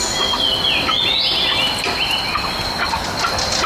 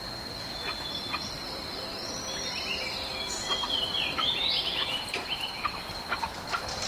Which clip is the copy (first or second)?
second